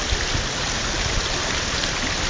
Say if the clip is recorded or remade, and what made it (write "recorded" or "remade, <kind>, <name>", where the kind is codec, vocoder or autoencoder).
remade, vocoder, BigVGAN v2